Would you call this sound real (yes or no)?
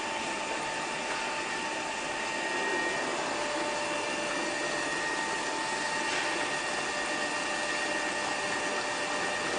yes